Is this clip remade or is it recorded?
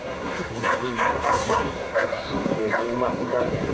remade